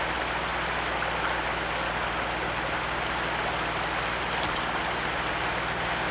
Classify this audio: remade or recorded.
recorded